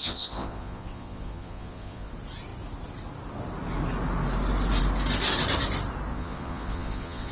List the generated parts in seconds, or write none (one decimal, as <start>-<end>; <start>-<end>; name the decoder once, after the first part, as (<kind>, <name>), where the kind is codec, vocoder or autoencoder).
0.0-2.1 (vocoder, Vocos); 6.1-7.3